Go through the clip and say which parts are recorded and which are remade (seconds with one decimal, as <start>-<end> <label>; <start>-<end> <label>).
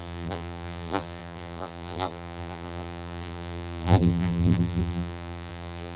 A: 0.0-6.0 remade